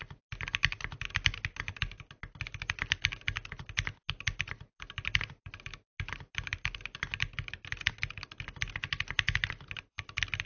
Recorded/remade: recorded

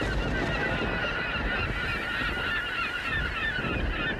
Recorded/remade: recorded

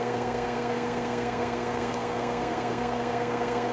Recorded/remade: remade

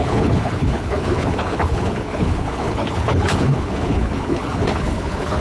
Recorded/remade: remade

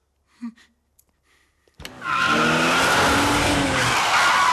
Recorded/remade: recorded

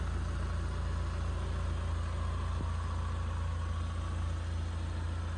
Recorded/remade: recorded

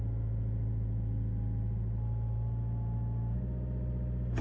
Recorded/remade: recorded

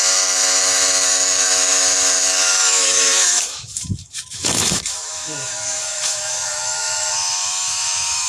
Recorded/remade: remade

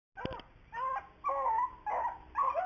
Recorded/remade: recorded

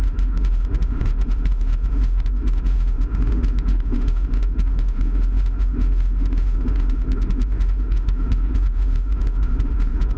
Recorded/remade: remade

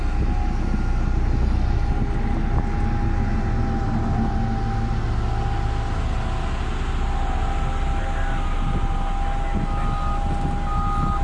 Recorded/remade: recorded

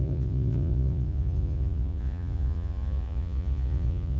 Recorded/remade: remade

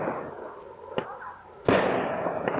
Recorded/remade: recorded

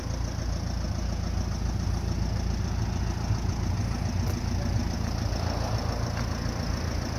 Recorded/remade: recorded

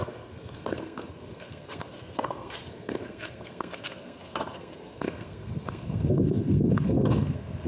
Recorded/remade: remade